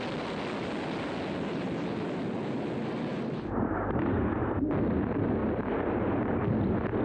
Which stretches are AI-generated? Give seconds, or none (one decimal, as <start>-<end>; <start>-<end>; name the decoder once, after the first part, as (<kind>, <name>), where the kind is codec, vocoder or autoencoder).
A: none